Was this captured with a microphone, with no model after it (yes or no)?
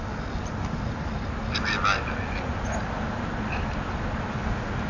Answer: yes